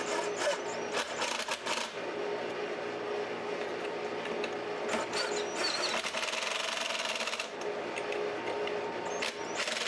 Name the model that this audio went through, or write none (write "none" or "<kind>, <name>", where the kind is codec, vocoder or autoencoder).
none